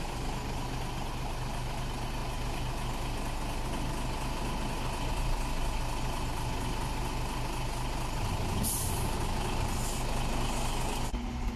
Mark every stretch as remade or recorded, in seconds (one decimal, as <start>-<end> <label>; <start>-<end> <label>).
0.0-11.6 recorded